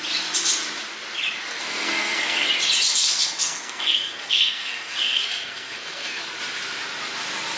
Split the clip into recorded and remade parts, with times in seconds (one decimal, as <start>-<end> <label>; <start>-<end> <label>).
0.0-1.5 recorded; 1.5-2.5 remade; 2.5-3.0 recorded; 3.0-6.2 remade; 6.2-7.6 recorded